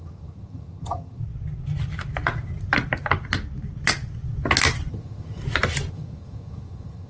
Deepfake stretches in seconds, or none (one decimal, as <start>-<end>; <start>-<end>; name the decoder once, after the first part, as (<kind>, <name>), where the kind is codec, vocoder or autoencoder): 0.0-1.2 (vocoder, HiFi-GAN); 4.9-5.4; 5.9-7.1